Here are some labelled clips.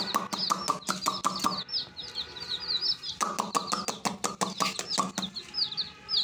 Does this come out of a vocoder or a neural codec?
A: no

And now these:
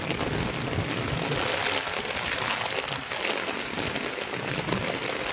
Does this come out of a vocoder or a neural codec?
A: no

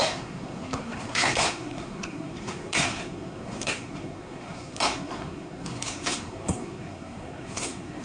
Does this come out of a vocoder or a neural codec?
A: yes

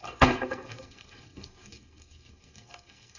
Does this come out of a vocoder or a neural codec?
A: yes